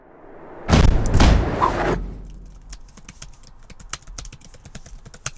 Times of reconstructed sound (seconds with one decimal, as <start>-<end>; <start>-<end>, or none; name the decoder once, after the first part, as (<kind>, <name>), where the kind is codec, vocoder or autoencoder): none